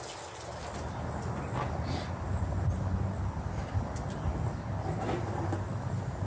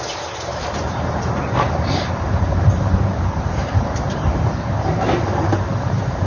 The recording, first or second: first